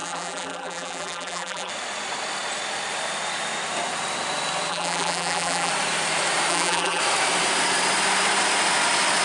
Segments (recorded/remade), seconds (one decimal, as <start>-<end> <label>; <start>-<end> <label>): 0.0-1.7 remade; 1.7-4.7 recorded; 4.7-5.7 remade; 5.7-6.5 recorded; 6.5-7.0 remade; 7.0-9.2 recorded